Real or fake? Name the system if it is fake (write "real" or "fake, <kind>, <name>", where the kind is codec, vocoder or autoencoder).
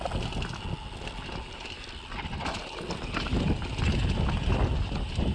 real